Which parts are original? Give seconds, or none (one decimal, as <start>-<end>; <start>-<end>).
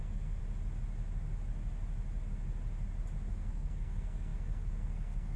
0.4-3.3